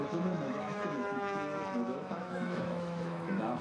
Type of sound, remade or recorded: remade